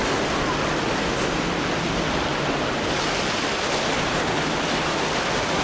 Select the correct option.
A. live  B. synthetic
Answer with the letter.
A